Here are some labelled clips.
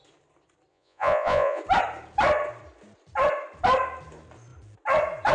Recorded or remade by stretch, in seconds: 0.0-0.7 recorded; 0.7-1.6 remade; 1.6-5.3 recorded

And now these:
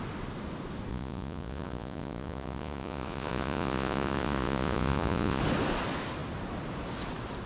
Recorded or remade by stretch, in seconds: 0.0-0.9 recorded; 0.9-5.4 remade; 5.4-7.5 recorded

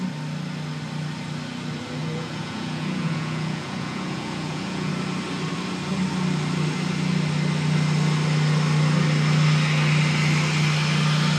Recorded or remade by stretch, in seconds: 0.0-2.0 recorded; 2.0-4.9 remade; 4.9-11.4 recorded

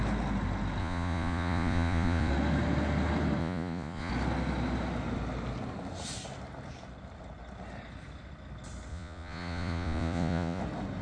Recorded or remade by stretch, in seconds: 0.0-0.8 recorded; 0.8-2.3 remade; 2.3-3.4 recorded; 3.4-4.1 remade; 4.1-8.9 recorded; 8.9-10.6 remade; 10.6-11.0 recorded

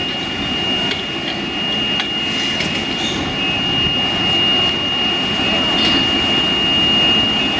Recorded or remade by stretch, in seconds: 0.0-7.6 recorded

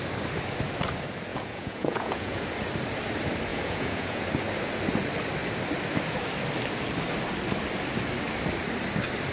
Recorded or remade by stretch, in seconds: 0.0-1.3 recorded; 1.3-2.4 remade; 2.4-3.5 recorded; 3.5-4.2 remade; 4.2-9.3 recorded